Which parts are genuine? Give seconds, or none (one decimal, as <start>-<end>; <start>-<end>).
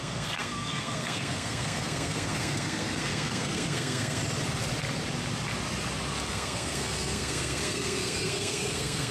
4.2-6.3